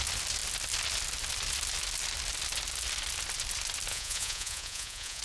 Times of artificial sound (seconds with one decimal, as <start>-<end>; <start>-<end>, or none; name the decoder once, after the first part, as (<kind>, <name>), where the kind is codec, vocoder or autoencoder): 3.9-5.2 (vocoder, Vocos)